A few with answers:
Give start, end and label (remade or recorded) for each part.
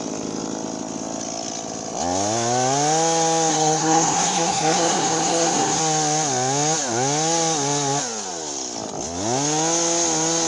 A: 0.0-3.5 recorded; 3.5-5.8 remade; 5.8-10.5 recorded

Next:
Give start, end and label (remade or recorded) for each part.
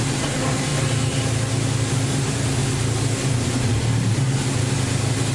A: 0.0-0.7 remade; 0.7-1.7 recorded; 1.7-2.6 remade; 2.6-4.7 recorded; 4.7-5.3 remade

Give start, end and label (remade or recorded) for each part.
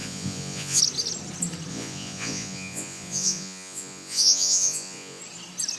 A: 0.0-0.8 remade; 0.8-1.7 recorded; 1.7-5.2 remade; 5.2-5.8 recorded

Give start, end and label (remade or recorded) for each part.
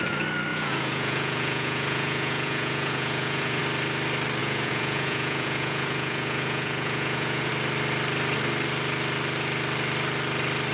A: 0.0-0.5 recorded; 0.5-3.6 remade; 3.6-4.4 recorded; 4.4-7.5 remade; 7.5-10.7 recorded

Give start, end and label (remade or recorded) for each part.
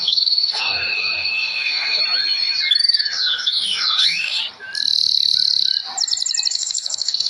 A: 0.0-2.0 remade; 2.0-3.0 recorded; 3.0-4.4 remade; 4.4-6.5 recorded; 6.5-7.3 remade